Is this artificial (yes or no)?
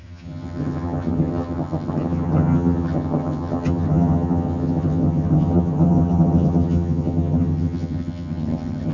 yes